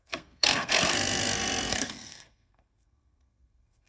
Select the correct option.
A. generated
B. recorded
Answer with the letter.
A